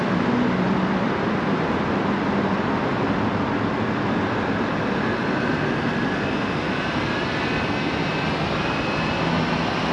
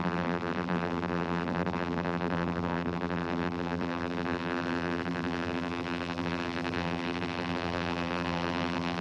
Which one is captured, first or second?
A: first